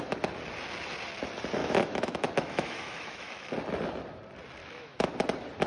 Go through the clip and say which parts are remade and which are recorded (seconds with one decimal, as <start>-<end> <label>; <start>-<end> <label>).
0.0-1.6 recorded; 1.6-3.5 remade; 3.5-4.6 recorded; 4.6-5.1 remade; 5.1-5.7 recorded